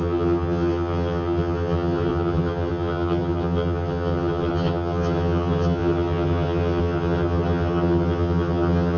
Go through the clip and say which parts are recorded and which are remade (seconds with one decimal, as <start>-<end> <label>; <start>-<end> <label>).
0.0-9.0 remade